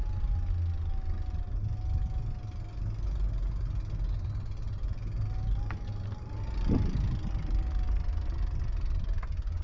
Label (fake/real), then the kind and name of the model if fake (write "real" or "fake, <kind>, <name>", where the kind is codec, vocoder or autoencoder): real